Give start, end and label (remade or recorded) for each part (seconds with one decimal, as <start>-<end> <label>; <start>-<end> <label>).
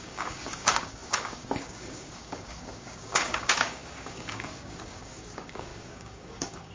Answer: 0.0-6.7 remade